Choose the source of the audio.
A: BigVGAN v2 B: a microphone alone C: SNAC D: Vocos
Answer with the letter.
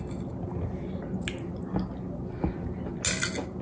B